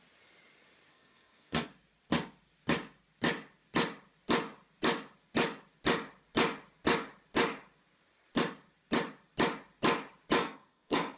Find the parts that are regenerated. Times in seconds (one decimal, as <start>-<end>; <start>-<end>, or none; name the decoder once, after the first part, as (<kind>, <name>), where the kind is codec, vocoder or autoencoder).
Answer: 0.9-1.7 (codec, SNAC); 10.4-11.2